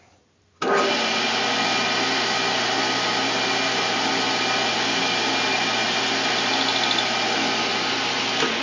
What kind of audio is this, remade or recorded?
recorded